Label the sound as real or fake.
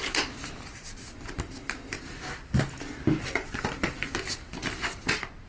real